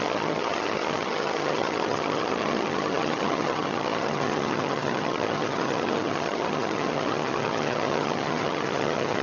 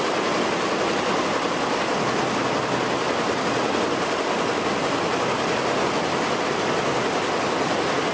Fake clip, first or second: first